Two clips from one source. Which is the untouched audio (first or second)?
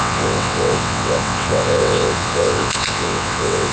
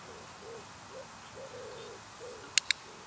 second